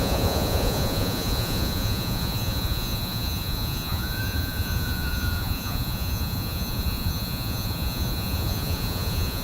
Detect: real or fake fake